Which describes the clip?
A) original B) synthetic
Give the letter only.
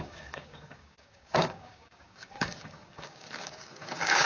B